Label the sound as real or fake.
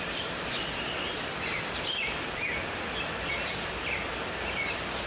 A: real